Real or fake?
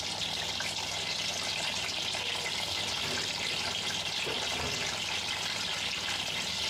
real